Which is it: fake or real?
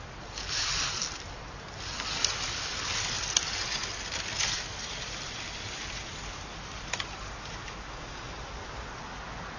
real